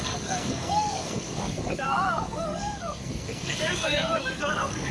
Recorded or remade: remade